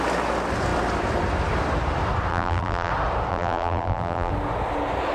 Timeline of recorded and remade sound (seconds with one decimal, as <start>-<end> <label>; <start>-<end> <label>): 0.0-2.3 recorded; 2.3-2.9 remade; 2.9-3.3 recorded; 3.3-4.3 remade; 4.3-5.1 recorded